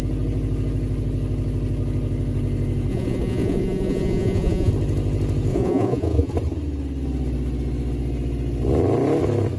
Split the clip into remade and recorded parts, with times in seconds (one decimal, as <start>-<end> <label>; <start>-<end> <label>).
0.0-2.9 recorded; 2.9-4.7 remade; 4.7-5.5 recorded; 5.5-6.3 remade; 6.3-9.6 recorded